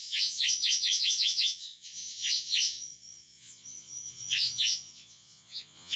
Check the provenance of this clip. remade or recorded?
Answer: remade